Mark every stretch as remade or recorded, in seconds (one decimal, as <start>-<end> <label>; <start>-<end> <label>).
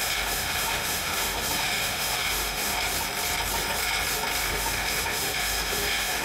0.0-2.9 remade; 2.9-4.5 recorded; 4.5-6.2 remade